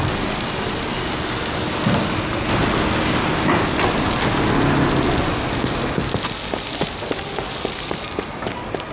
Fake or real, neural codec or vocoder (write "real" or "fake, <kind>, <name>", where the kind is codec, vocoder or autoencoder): real